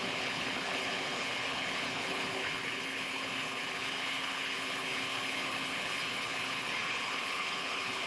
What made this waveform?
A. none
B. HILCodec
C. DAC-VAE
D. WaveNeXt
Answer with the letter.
B